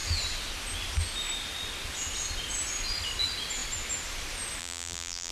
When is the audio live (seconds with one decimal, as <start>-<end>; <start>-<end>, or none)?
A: 0.0-4.6